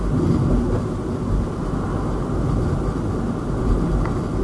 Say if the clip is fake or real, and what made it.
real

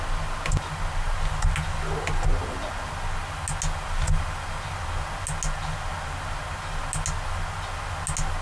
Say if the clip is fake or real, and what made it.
real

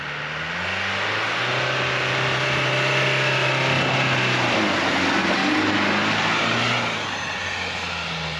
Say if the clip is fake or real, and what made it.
real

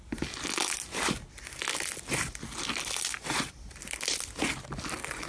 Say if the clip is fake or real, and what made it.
real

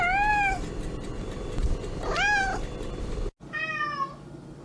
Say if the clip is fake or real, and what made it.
real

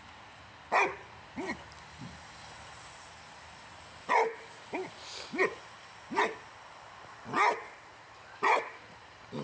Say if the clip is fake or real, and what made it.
real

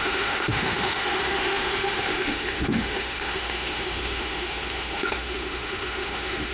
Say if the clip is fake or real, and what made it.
fake, autoencoder, DAC-VAE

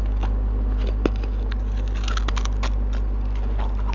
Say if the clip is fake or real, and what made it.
real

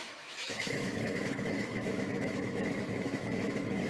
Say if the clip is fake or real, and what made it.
fake, autoencoder, DAC-VAE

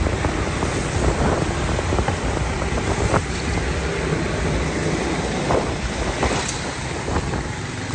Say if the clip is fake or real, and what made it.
real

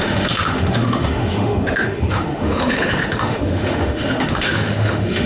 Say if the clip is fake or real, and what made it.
fake, autoencoder, DAC-VAE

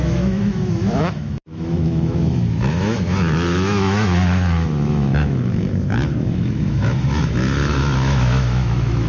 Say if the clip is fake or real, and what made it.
fake, autoencoder, DAC-VAE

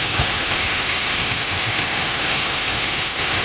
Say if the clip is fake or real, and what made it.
fake, autoencoder, DAC-VAE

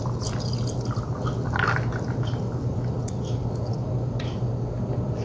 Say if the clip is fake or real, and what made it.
real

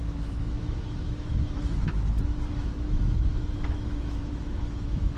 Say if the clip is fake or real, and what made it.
fake, autoencoder, DAC-VAE